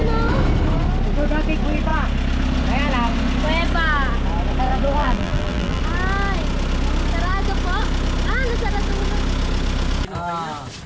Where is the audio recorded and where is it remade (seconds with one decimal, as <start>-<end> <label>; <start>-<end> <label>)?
0.0-5.0 recorded; 5.0-5.8 remade; 5.8-10.9 recorded